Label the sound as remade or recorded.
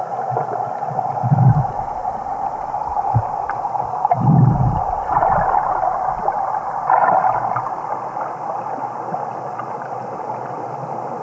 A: recorded